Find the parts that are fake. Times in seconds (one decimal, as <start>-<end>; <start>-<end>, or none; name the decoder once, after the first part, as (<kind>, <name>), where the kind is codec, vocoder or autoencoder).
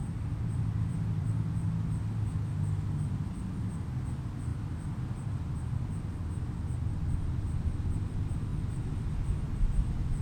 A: 0.0-1.5 (vocoder, BigVGAN v2); 4.5-5.8; 8.5-9.5